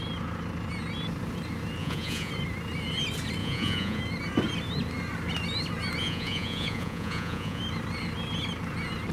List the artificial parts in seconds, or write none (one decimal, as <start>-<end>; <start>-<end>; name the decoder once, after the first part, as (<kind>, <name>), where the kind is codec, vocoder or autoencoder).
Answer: 1.8-2.3 (vocoder, Vocos); 3.4-4.0; 6.0-7.6